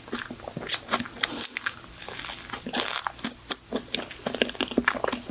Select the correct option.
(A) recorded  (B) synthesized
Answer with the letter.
A